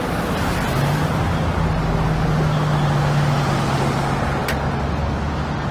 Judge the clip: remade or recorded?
recorded